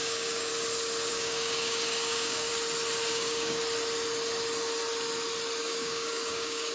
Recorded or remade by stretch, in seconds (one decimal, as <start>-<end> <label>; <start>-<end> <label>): 0.0-0.5 remade; 0.5-1.1 recorded; 1.1-2.5 remade; 2.5-3.1 recorded; 3.1-3.6 remade; 3.6-5.6 recorded; 5.6-6.7 remade